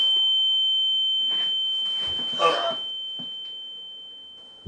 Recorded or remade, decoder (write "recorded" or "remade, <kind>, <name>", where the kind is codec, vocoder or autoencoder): recorded